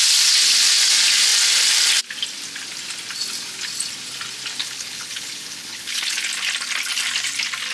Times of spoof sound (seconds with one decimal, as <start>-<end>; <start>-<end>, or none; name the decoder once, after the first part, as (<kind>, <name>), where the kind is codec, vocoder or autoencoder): 4.6-6.0 (codec, HILCodec)